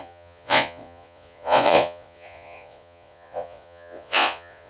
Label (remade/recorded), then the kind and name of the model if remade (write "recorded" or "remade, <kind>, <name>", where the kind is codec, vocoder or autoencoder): remade, vocoder, Vocos